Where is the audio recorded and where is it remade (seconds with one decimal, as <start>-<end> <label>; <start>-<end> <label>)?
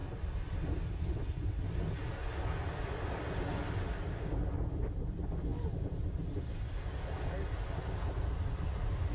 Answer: 0.0-5.5 recorded; 5.5-6.4 remade; 6.4-9.1 recorded